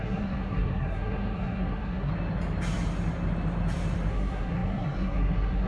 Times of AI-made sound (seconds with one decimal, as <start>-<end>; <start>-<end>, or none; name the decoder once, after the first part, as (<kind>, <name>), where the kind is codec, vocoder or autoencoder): 0.0-2.1 (codec, SNAC); 4.1-5.7